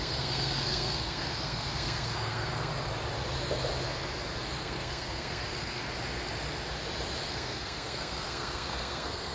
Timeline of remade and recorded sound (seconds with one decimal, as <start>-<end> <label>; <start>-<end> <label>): 0.0-2.7 remade; 2.7-4.6 recorded; 4.6-5.8 remade; 5.8-7.3 recorded; 7.3-9.3 remade